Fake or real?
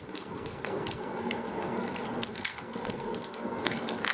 fake